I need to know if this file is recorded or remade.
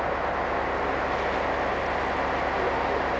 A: recorded